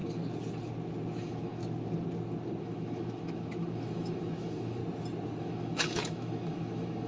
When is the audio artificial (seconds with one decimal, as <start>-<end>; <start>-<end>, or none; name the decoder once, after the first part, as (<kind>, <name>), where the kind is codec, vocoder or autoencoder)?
1.2-1.6 (autoencoder, DAC-VAE); 2.6-4.8; 5.4-7.1